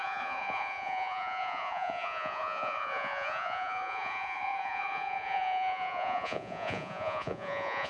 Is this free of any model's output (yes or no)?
no